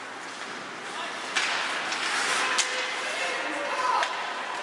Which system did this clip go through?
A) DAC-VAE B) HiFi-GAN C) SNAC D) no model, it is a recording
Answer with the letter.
D